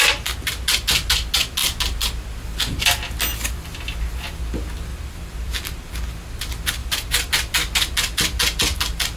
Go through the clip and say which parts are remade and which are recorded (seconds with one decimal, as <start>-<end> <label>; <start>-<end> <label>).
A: 0.0-4.9 recorded; 4.9-5.9 remade; 5.9-6.8 recorded; 6.8-7.3 remade; 7.3-9.2 recorded